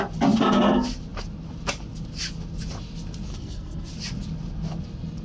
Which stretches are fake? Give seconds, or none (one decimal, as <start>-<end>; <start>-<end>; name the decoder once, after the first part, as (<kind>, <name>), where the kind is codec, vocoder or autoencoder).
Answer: 3.3-3.9 (codec, SNAC)